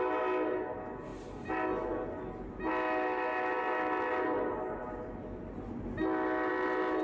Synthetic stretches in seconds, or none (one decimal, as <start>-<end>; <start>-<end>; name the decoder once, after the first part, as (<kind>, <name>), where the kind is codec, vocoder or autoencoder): none